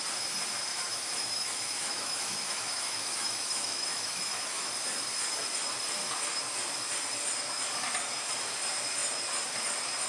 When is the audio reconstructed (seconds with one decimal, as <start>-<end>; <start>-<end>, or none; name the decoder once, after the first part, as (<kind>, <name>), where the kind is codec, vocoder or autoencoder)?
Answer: 0.7-4.7 (autoencoder, DAC-VAE)